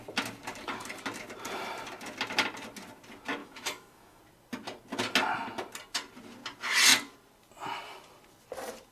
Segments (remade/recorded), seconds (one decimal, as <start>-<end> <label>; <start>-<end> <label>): 0.0-3.4 recorded; 3.4-4.2 remade; 4.2-8.9 recorded